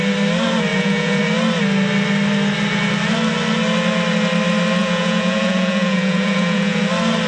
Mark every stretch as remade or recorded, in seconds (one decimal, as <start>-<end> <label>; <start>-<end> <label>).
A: 0.0-0.7 recorded; 0.7-1.2 remade; 1.2-4.8 recorded; 4.8-6.8 remade; 6.8-7.3 recorded